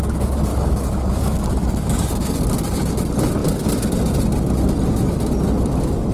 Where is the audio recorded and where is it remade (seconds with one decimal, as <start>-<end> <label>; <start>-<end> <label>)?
0.0-0.5 recorded; 0.5-2.1 remade; 2.1-6.1 recorded